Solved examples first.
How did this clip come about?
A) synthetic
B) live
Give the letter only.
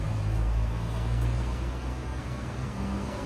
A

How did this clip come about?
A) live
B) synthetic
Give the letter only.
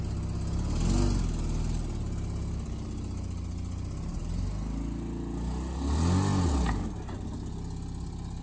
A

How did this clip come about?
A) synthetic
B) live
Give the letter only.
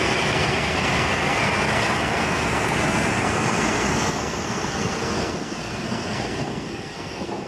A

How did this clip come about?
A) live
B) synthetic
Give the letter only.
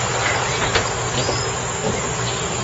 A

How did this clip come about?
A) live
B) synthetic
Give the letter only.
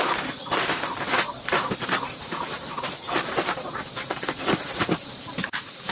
B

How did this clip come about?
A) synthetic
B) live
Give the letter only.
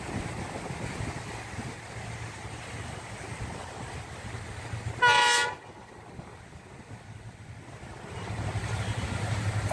B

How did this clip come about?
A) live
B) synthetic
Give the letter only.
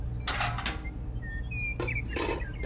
A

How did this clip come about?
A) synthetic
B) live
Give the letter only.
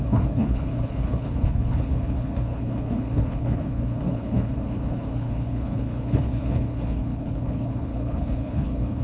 A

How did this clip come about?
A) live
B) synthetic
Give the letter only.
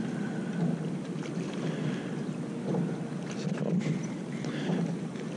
A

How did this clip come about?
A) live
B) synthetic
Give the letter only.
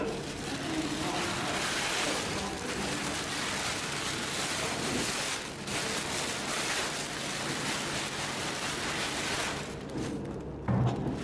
A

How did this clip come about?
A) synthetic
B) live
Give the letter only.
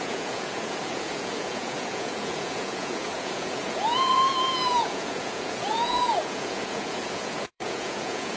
A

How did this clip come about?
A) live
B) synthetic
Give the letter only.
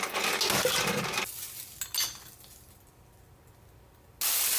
A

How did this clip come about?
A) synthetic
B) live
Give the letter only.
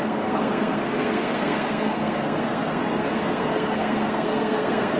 A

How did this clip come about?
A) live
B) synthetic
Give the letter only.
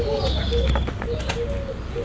A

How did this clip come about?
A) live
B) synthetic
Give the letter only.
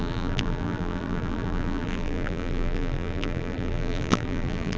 B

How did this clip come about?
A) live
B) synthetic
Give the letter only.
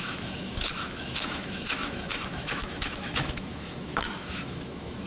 B